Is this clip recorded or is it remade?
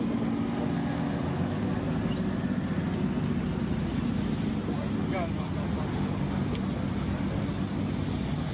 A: recorded